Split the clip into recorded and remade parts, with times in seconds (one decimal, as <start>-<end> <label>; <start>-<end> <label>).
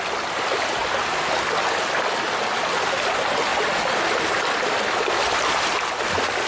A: 0.0-6.5 recorded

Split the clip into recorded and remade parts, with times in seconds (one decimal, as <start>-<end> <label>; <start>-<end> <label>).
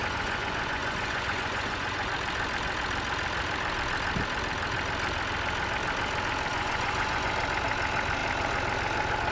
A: 0.0-2.1 remade; 2.1-6.5 recorded; 6.5-7.3 remade; 7.3-9.3 recorded